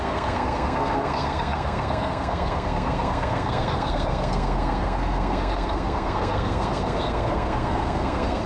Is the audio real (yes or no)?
no